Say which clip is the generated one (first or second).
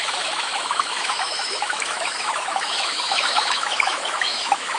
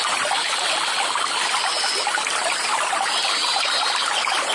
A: first